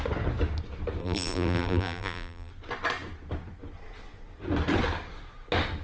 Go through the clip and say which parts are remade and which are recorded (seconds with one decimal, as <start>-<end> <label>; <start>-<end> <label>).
0.0-1.0 recorded; 1.0-2.5 remade; 2.5-5.8 recorded